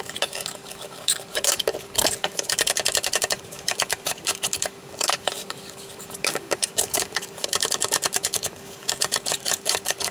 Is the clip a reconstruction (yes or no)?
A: yes